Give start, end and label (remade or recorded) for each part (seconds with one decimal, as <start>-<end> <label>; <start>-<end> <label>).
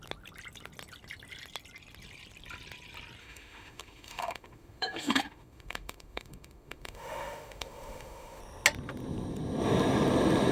0.0-3.2 recorded; 3.2-8.4 remade; 8.4-10.5 recorded